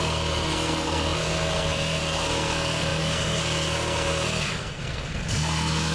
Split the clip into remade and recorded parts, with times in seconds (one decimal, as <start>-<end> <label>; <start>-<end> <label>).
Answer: 0.0-5.9 remade